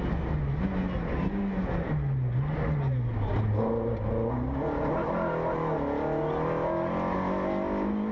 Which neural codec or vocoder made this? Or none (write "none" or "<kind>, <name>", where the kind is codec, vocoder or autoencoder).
none